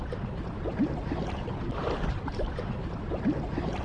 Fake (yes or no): no